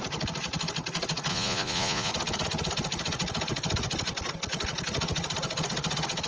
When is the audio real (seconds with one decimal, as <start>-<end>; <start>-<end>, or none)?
0.0-1.3; 2.1-6.3